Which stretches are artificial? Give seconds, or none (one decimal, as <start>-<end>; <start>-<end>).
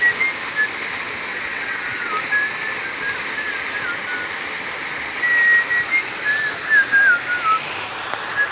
1.3-2.1